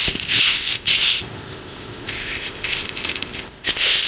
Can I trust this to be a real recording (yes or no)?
no